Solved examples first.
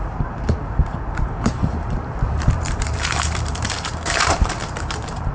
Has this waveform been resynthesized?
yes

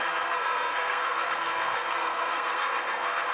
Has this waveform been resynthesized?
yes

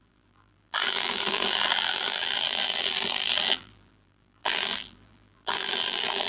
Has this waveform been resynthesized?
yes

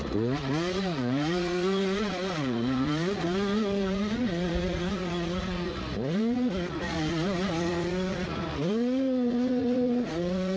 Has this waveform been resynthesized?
yes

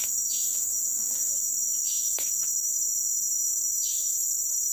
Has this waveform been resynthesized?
yes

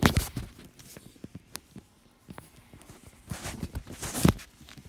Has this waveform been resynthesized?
no